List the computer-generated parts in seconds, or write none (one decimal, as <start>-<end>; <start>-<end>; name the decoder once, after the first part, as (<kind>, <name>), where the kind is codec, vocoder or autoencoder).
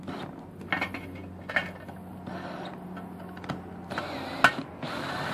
1.2-4.4 (vocoder, BigVGAN v2)